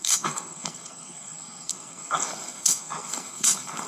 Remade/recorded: remade